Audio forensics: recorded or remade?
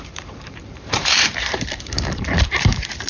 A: remade